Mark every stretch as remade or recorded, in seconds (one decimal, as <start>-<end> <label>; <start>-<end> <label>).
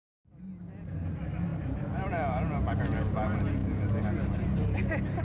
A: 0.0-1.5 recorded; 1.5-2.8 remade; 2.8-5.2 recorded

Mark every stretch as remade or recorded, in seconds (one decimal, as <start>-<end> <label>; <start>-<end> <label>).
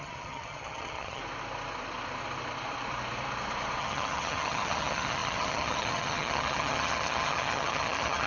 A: 0.0-1.2 remade; 1.2-3.8 recorded; 3.8-8.3 remade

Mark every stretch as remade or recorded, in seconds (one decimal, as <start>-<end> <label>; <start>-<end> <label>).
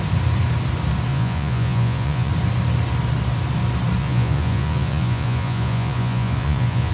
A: 0.0-1.1 recorded; 1.1-2.3 remade; 2.3-4.0 recorded; 4.0-6.9 remade